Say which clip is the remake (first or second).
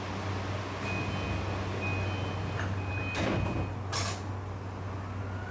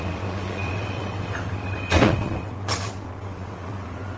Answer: second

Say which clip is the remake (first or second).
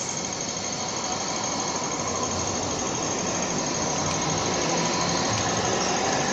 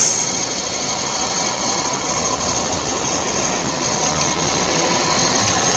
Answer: second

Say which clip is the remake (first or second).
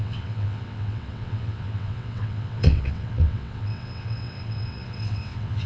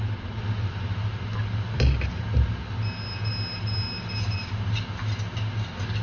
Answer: first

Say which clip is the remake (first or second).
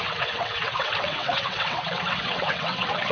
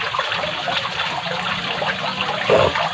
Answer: first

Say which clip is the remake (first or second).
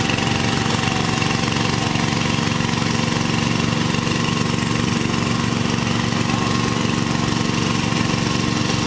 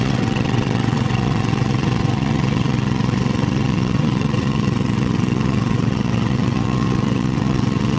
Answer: second